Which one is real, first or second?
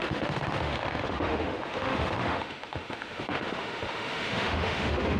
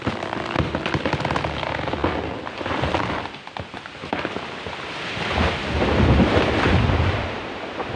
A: second